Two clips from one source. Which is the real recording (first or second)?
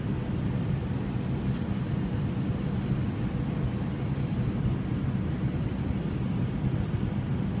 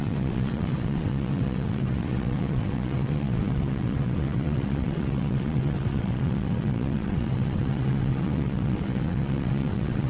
first